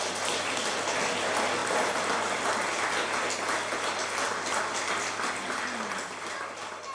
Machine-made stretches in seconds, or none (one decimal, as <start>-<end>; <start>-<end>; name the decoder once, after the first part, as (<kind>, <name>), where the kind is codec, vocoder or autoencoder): none